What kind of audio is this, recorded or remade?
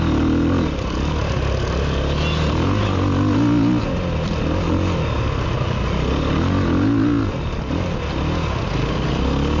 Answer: recorded